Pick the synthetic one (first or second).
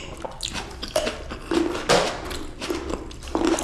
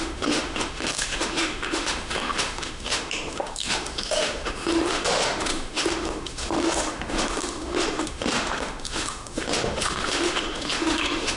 second